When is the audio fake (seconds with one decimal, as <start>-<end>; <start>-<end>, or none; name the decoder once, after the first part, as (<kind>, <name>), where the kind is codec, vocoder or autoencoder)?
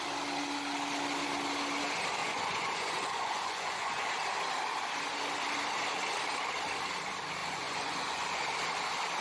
2.2-4.1 (vocoder, Vocos); 7.4-8.4